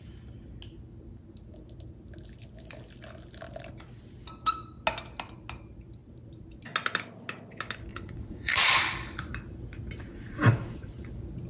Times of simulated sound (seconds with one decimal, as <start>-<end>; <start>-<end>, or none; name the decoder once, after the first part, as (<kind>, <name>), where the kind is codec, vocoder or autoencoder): 7.9-8.7 (vocoder, Vocos); 10.1-11.1